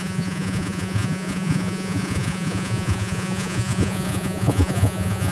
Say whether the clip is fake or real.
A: fake